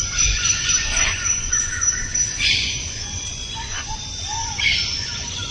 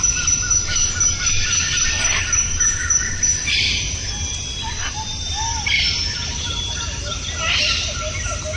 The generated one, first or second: first